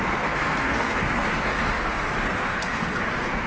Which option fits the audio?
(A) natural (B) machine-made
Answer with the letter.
B